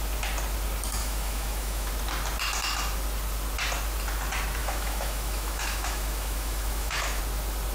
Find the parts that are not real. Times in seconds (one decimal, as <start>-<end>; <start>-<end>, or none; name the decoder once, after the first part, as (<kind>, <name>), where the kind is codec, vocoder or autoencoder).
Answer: 1.0-1.9 (autoencoder, DAC-VAE); 4.6-7.2